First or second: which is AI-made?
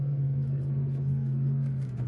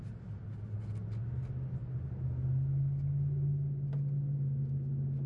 first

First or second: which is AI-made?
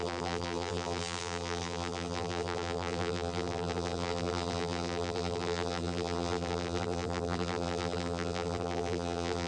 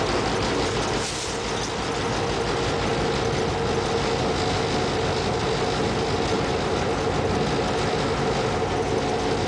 first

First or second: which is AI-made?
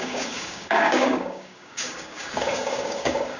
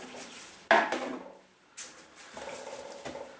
first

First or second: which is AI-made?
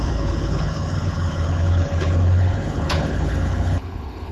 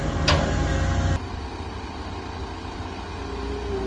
first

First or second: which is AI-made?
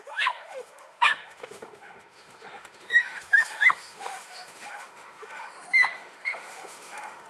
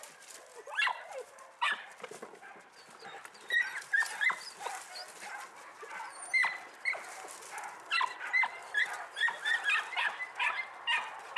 first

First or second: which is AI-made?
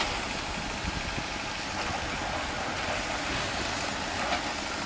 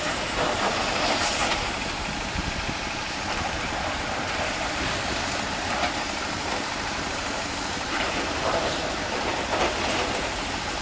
second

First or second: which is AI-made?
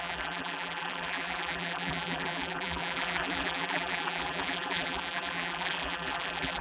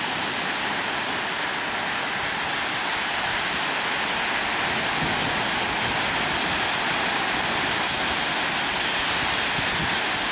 first